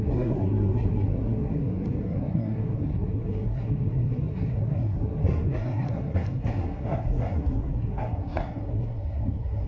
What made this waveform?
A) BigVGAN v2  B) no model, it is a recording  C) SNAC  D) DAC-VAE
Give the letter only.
C